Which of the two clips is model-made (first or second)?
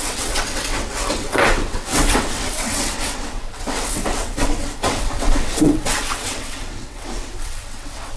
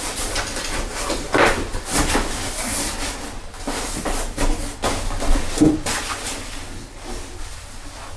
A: first